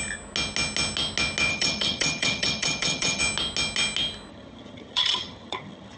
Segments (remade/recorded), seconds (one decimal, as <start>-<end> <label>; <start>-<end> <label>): 0.0-1.5 recorded; 1.5-3.2 remade; 3.2-4.3 recorded; 4.3-6.0 remade